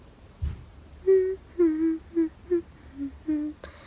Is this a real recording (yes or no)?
yes